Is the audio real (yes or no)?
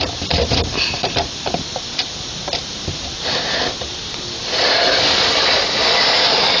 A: yes